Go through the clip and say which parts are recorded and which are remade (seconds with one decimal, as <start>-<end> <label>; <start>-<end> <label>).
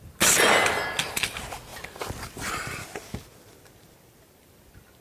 0.0-5.0 recorded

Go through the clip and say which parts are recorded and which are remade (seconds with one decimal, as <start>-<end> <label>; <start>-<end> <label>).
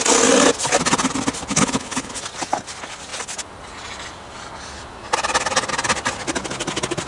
0.0-1.5 recorded; 1.5-2.1 remade; 2.1-7.1 recorded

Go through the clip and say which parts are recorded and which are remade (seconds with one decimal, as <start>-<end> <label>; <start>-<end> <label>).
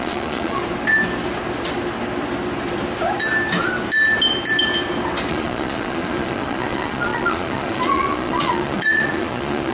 0.0-0.6 remade; 0.6-5.3 recorded; 5.3-9.7 remade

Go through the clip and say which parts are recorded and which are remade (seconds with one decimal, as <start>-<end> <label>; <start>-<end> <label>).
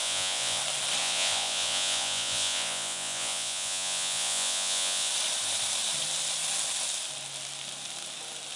0.0-0.6 remade; 0.6-1.0 recorded; 1.0-5.1 remade; 5.1-8.6 recorded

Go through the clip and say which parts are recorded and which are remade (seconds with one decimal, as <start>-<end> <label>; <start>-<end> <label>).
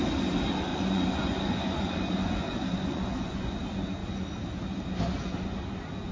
0.0-0.7 recorded; 0.7-3.6 remade; 3.6-6.1 recorded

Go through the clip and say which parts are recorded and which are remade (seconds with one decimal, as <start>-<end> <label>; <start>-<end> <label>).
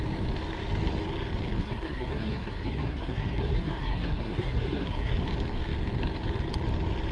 0.0-1.6 recorded; 1.6-5.1 remade; 5.1-7.1 recorded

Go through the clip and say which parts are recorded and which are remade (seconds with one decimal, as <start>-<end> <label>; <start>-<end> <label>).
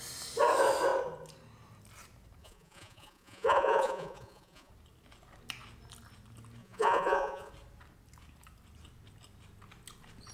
0.0-2.4 recorded; 2.4-4.7 remade; 4.7-6.6 recorded; 6.6-7.5 remade; 7.5-10.3 recorded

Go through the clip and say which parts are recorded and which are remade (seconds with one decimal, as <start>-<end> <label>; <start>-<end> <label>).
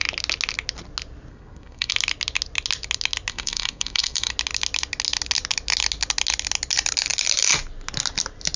0.0-1.3 recorded; 1.3-1.9 remade; 1.9-3.3 recorded; 3.3-4.3 remade; 4.3-8.6 recorded